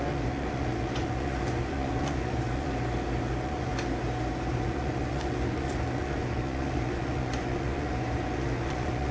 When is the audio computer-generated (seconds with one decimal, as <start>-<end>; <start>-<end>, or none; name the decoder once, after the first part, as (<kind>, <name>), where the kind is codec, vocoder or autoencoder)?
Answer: 0.0-2.7 (vocoder, Vocos); 3.3-3.7; 4.6-9.1